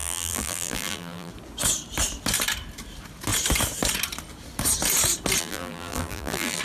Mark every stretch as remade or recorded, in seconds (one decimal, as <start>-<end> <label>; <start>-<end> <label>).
0.0-1.3 remade; 1.3-5.4 recorded; 5.4-6.6 remade